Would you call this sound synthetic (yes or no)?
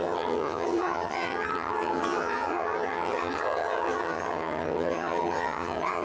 yes